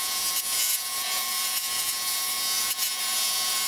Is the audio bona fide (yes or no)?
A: no